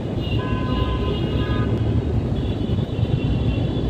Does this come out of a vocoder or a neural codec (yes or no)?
no